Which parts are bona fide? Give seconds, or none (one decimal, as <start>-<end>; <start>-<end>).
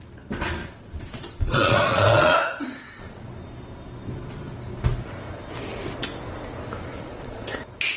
0.0-0.6; 3.3-6.9; 7.6-8.0